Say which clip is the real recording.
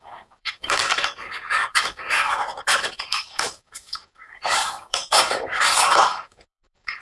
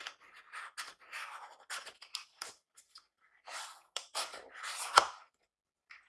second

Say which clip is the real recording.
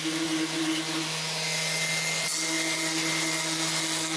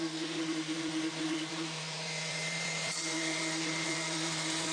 first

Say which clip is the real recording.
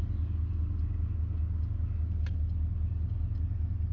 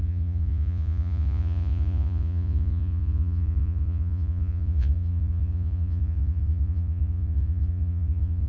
first